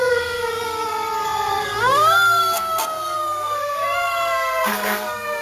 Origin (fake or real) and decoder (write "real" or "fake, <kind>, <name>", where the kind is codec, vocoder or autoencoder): fake, codec, SNAC